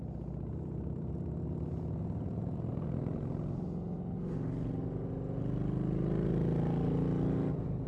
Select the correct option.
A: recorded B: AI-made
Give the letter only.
A